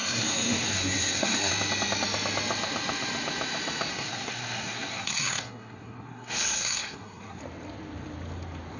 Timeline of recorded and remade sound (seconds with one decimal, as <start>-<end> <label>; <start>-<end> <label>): 0.0-1.5 remade; 1.5-3.9 recorded; 3.9-7.4 remade; 7.4-8.8 recorded